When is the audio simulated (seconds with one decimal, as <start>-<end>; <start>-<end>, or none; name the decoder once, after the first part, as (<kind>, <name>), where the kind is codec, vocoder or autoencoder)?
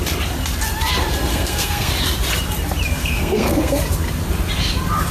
1.3-1.9 (codec, SNAC); 3.0-3.8